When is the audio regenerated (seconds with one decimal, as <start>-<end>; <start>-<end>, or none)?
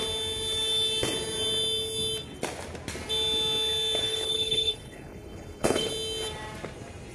4.0-5.9